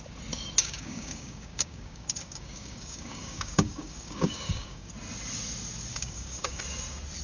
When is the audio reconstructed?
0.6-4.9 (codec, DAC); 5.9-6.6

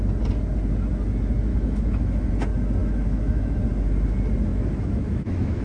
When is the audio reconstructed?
1.5-2.3 (autoencoder, DAC-VAE); 2.8-3.6; 4.5-5.6